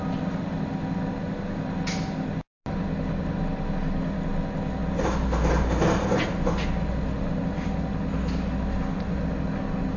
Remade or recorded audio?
recorded